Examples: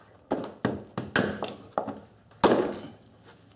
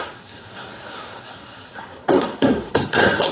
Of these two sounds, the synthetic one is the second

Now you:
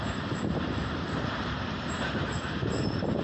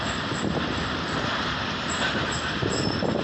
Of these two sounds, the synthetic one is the first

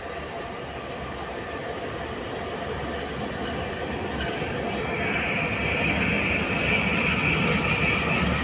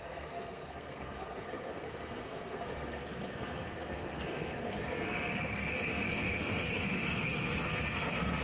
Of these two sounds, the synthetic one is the second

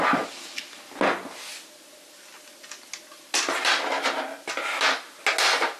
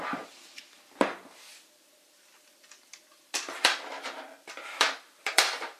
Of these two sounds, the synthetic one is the second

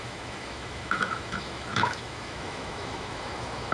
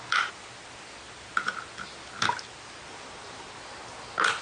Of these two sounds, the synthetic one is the first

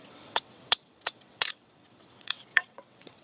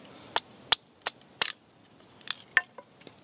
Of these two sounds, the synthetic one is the first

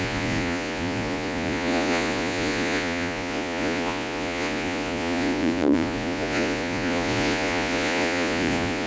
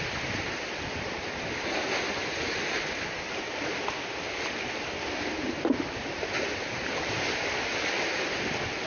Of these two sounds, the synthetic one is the first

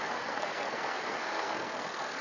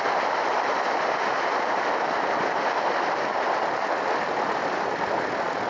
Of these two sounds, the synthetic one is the first